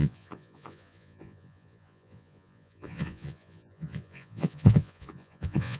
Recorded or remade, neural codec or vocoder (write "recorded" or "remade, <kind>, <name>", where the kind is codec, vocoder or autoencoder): remade, vocoder, Vocos